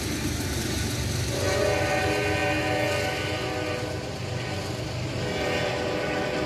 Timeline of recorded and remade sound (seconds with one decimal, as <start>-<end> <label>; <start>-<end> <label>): 0.0-6.5 recorded